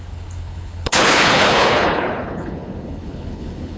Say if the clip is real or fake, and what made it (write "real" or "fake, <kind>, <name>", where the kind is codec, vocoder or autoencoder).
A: fake, codec, HILCodec